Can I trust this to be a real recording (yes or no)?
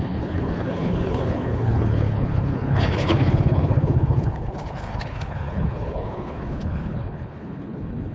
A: no